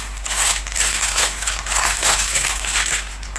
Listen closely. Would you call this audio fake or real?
fake